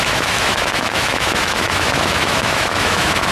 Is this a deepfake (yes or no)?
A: yes